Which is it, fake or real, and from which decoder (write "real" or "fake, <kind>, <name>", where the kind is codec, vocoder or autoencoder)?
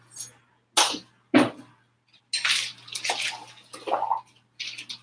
real